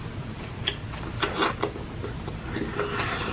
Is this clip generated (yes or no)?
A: no